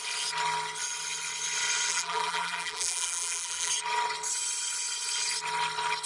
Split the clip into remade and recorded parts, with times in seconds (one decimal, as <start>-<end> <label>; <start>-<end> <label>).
0.0-1.9 recorded; 1.9-3.7 remade; 3.7-6.1 recorded